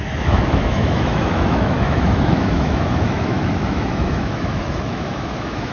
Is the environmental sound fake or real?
fake